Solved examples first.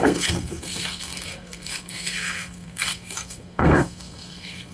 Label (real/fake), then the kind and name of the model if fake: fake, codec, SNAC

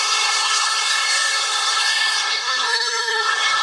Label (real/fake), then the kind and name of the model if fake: fake, codec, SNAC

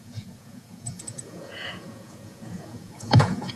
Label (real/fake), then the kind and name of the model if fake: fake, vocoder, Vocos